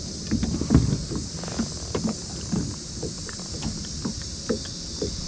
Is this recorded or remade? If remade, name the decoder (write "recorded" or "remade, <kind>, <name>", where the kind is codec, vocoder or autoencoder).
remade, vocoder, BigVGAN v2